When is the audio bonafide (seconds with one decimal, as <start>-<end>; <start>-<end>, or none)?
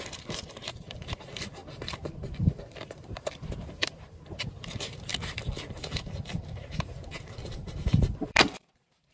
none